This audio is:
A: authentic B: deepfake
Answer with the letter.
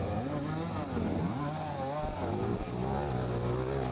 A